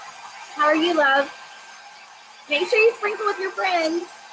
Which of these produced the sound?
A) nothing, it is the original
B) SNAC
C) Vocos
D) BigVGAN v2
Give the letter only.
A